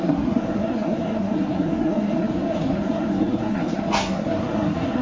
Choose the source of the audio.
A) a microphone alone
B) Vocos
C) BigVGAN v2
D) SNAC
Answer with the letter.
D